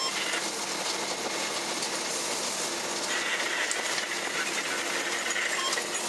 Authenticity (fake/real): real